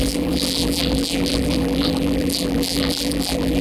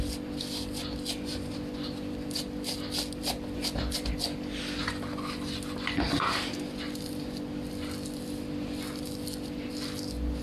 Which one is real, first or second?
second